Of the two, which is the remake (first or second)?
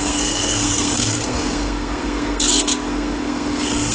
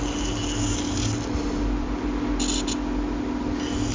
first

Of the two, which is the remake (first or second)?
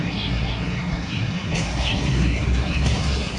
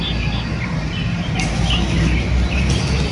first